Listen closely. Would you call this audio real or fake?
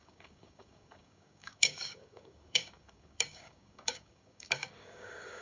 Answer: fake